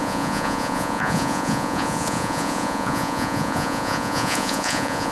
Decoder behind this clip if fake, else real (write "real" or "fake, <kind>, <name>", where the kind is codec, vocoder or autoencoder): fake, vocoder, Vocos